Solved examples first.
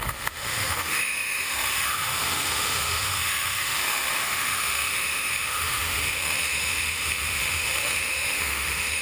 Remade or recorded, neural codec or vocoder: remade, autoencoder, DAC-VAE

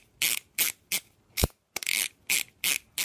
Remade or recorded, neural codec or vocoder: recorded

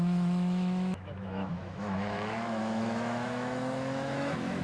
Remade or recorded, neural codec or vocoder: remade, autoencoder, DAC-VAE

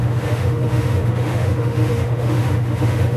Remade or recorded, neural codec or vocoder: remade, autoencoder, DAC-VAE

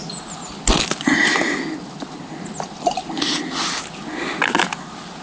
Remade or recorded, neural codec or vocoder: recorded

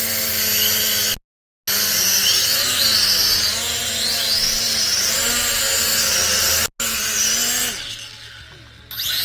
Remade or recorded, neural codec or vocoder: recorded